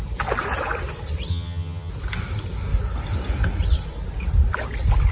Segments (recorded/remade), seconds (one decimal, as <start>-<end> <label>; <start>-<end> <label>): 0.0-1.3 recorded; 1.3-1.9 remade; 1.9-5.1 recorded